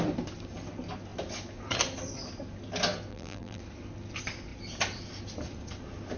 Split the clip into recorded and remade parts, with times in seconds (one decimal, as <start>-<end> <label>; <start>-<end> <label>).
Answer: 0.0-3.1 recorded; 3.1-3.6 remade; 3.6-6.2 recorded